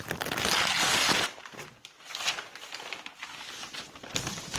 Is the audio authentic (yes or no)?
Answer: yes